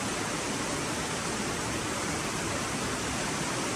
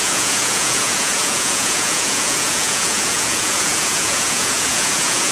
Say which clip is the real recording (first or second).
first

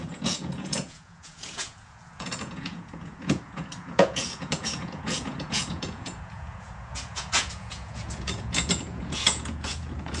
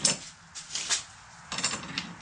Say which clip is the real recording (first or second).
second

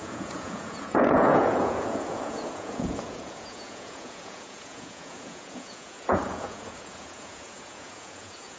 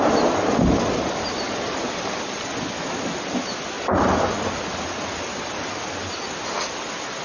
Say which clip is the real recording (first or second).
second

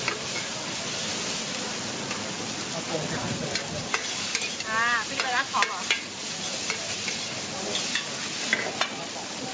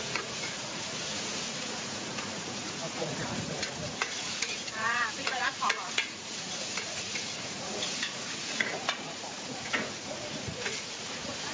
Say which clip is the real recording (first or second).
first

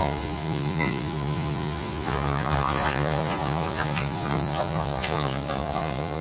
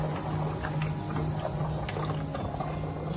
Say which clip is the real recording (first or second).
second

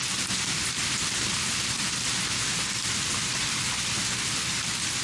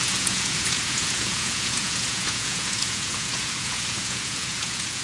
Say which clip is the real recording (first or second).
first